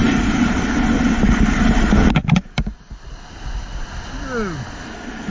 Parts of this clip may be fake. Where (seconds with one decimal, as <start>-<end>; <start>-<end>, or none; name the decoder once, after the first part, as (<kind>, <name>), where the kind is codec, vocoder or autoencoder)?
none